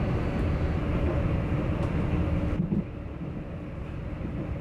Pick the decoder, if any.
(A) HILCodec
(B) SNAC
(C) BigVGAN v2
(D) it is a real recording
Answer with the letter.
D